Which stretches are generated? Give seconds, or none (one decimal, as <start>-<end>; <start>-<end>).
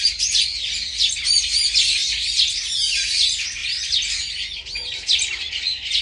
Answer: 2.0-2.7